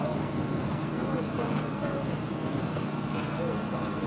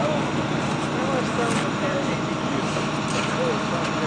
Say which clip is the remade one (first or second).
first